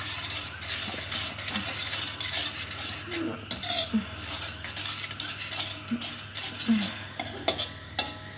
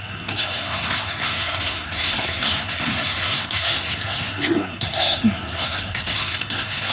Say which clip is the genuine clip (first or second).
first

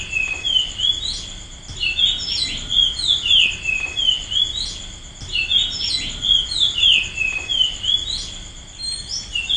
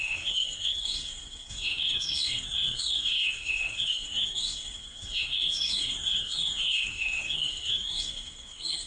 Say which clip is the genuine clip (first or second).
first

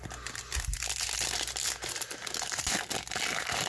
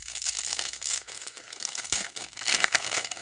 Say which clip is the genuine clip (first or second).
first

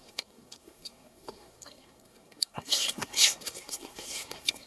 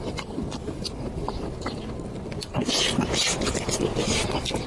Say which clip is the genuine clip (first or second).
second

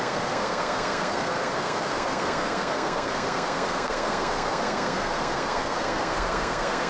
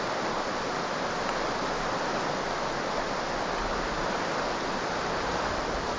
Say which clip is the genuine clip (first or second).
second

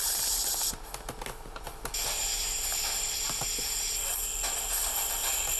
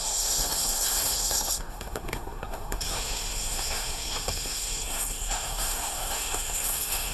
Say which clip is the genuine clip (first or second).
first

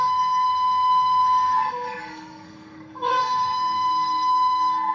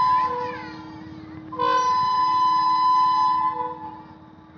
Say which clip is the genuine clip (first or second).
second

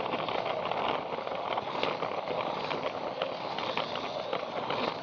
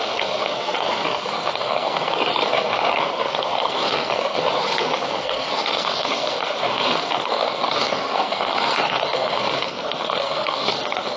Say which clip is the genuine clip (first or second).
first